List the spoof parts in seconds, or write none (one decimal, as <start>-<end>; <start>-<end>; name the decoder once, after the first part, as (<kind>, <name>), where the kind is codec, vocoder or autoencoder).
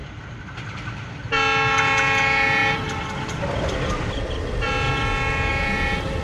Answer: 0.0-0.5 (vocoder, BigVGAN v2)